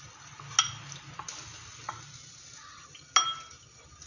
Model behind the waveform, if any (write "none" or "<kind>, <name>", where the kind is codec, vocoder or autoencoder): none